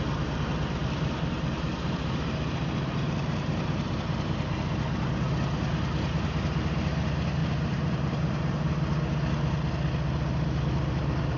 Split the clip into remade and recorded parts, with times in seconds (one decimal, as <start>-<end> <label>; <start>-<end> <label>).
0.0-0.8 recorded; 0.8-3.9 remade; 3.9-7.4 recorded; 7.4-8.7 remade; 8.7-11.4 recorded